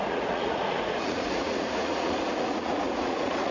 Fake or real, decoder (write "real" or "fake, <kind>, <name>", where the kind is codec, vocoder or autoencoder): fake, vocoder, Vocos